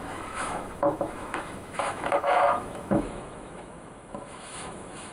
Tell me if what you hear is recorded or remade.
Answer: remade